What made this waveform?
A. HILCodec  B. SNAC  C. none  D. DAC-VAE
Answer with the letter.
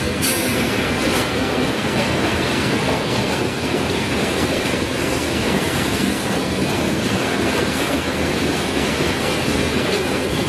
B